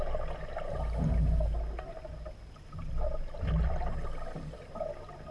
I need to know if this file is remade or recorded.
recorded